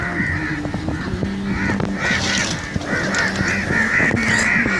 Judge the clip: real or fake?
real